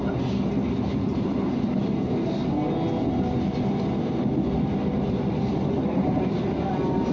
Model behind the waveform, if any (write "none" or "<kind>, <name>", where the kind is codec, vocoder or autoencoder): none